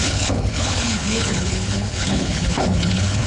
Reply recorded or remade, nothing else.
remade